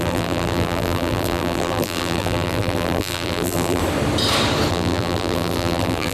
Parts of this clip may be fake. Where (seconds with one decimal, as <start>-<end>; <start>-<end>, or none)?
0.0-3.8; 4.7-6.1